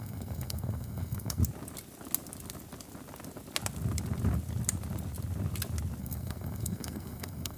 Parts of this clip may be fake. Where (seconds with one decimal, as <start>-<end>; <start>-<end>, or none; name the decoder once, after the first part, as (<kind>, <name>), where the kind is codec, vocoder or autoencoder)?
0.0-1.4 (codec, SNAC); 6.0-7.6